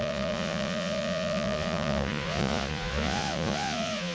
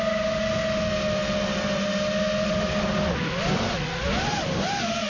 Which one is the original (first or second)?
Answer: second